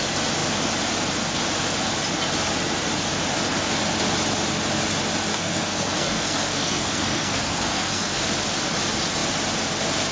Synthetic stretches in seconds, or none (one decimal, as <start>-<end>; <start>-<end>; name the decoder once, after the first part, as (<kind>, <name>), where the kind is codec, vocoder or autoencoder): 5.3-8.3 (codec, SNAC)